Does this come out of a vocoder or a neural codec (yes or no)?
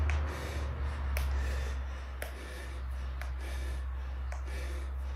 no